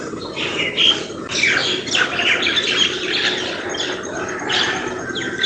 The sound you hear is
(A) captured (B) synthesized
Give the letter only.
A